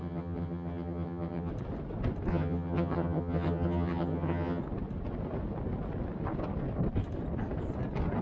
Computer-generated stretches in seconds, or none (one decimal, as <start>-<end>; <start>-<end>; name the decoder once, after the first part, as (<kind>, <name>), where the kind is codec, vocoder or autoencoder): 0.0-1.5 (vocoder, HiFi-GAN); 2.3-4.6